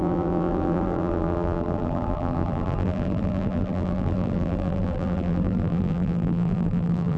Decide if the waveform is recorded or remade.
remade